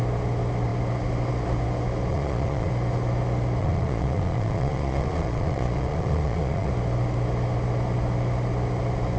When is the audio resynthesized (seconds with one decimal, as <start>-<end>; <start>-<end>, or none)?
2.1-2.7; 3.6-6.7

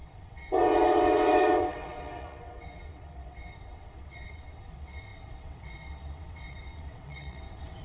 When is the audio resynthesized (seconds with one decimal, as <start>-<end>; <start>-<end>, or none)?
0.0-7.8

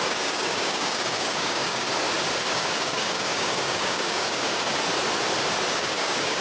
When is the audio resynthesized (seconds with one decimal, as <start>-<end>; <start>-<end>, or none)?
0.0-1.9; 2.4-4.7; 5.7-6.4